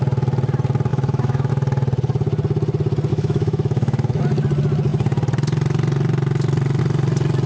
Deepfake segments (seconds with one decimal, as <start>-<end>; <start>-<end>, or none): 0.9-1.5; 3.1-4.2